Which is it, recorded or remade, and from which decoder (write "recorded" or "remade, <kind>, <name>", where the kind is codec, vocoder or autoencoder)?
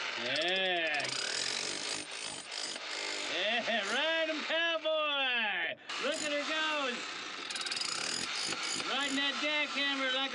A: recorded